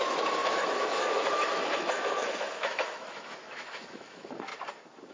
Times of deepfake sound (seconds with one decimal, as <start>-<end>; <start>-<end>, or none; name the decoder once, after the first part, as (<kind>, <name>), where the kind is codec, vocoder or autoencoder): 0.0-4.5 (autoencoder, DAC-VAE)